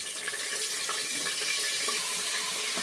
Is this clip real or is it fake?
fake